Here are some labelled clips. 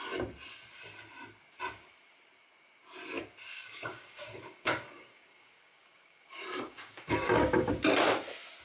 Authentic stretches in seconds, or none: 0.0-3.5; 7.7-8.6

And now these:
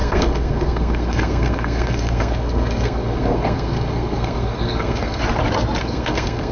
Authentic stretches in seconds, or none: 5.2-5.8